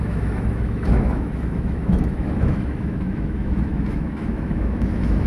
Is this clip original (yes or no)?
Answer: no